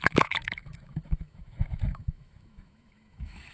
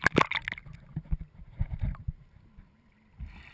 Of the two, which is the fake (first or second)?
first